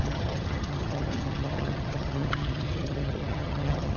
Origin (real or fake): fake